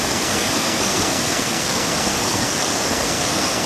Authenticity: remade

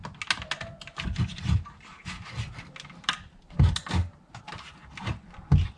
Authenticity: recorded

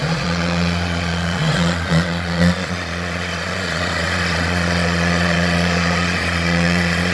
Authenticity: remade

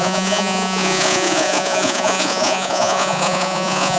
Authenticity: remade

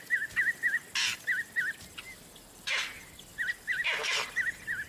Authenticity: recorded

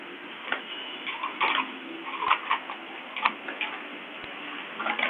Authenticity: recorded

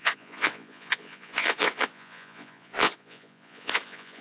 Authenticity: remade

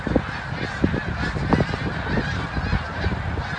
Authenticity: recorded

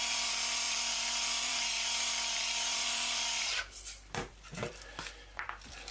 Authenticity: remade